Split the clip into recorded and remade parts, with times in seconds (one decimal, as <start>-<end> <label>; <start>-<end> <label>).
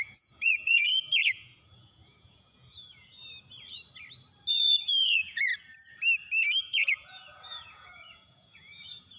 0.0-3.2 remade; 3.2-4.5 recorded; 4.5-5.5 remade; 5.5-6.6 recorded; 6.6-9.2 remade